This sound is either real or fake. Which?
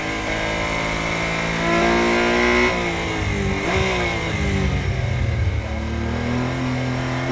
real